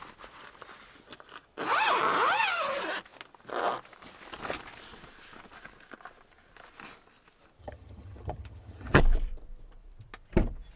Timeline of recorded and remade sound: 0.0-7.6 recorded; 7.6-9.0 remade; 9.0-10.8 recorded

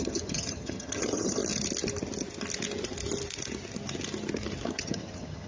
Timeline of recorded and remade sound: 0.0-1.4 remade; 1.4-4.7 recorded; 4.7-5.5 remade

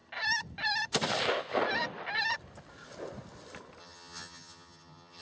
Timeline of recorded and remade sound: 0.0-3.8 recorded; 3.8-5.2 remade

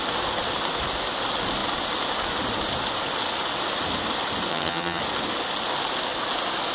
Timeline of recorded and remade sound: 0.0-4.5 recorded; 4.5-5.0 remade; 5.0-6.7 recorded

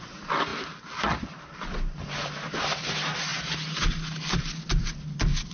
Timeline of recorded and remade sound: 0.0-5.5 recorded

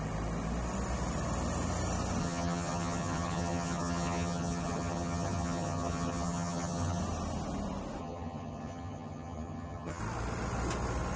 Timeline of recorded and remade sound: 0.0-2.2 recorded; 2.2-7.0 remade; 7.0-8.0 recorded; 8.0-10.0 remade; 10.0-11.2 recorded